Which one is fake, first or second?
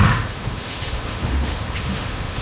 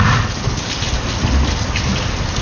first